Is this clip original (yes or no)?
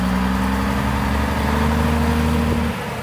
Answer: yes